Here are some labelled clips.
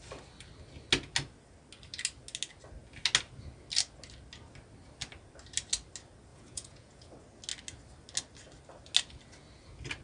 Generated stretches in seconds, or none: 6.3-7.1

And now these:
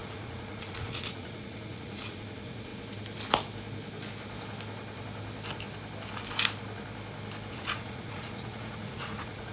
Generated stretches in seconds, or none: 0.0-2.7; 7.5-9.5

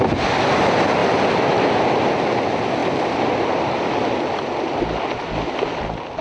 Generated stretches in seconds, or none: none

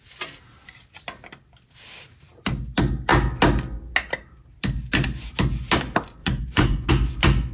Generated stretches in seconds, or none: 6.2-6.9

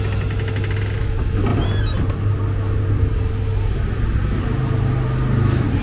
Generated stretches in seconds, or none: none

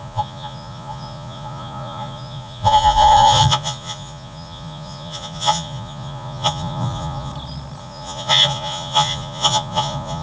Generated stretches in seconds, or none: 0.0-7.3; 7.8-10.2

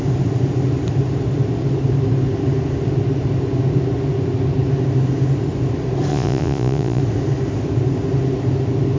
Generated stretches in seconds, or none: 6.1-7.0

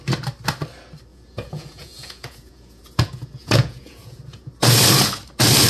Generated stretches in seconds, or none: 1.1-4.5